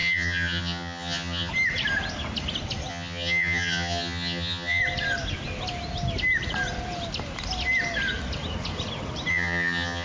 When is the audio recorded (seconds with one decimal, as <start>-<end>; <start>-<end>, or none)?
1.5-2.9; 4.8-9.3